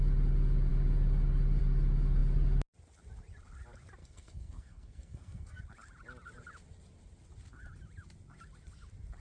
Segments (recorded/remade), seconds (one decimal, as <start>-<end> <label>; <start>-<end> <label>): 0.0-4.0 recorded; 4.0-5.6 remade; 5.6-9.2 recorded